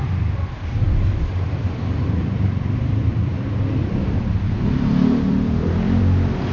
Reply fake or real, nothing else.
fake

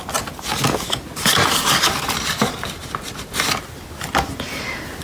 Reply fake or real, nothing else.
real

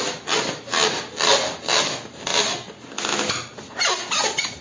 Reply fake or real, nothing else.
real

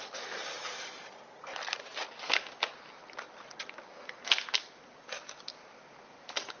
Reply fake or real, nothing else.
real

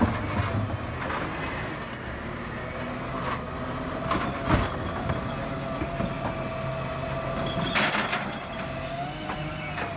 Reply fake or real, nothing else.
real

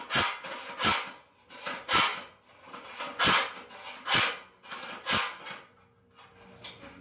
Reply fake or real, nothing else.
real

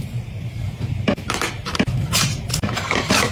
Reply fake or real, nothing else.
fake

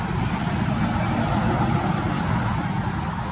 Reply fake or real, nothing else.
real